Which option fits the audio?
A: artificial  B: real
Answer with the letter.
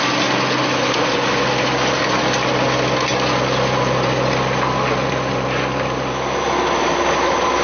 B